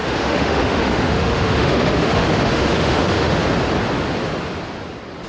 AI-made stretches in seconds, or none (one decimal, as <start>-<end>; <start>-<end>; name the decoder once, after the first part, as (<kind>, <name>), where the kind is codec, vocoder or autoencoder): 0.0-3.4 (autoencoder, DAC-VAE)